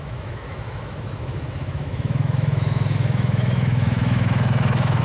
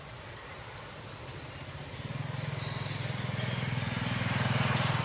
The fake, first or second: first